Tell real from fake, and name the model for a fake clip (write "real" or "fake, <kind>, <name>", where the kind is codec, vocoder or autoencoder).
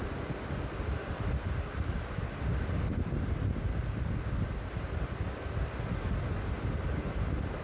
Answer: real